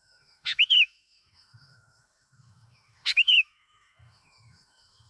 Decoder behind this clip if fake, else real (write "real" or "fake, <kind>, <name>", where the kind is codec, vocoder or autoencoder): fake, autoencoder, DAC-VAE